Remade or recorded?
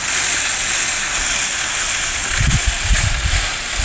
recorded